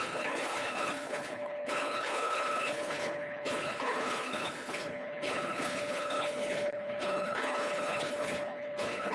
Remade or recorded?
remade